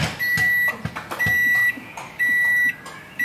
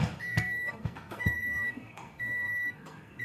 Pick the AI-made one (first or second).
second